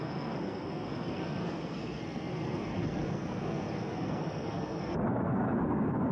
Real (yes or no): no